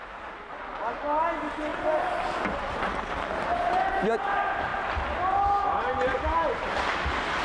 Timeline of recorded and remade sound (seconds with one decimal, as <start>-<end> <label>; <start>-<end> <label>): 0.0-7.4 recorded